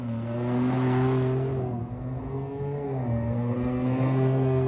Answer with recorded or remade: remade